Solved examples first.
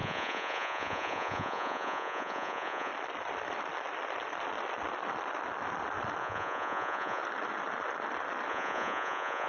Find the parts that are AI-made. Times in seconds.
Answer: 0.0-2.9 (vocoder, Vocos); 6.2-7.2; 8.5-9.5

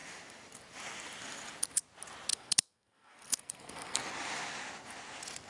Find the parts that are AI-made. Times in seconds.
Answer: 2.3-4.0 (codec, SNAC)